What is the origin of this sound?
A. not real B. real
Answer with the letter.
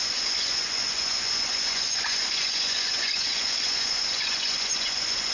A